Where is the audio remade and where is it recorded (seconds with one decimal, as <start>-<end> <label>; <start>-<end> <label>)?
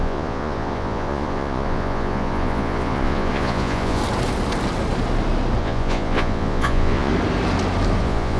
0.0-4.0 remade; 4.0-5.6 recorded; 5.6-7.1 remade; 7.1-8.0 recorded; 8.0-8.4 remade